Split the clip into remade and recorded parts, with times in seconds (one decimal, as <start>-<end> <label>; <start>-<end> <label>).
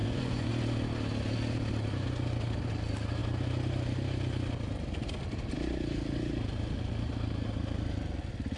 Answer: 0.0-0.5 remade; 0.5-8.6 recorded